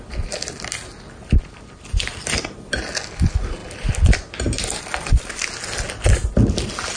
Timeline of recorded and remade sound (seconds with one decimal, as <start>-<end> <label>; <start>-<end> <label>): 0.0-7.0 recorded